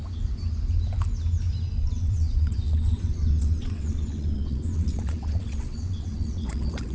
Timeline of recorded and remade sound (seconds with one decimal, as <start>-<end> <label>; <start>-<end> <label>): 0.0-1.8 recorded; 1.8-6.9 remade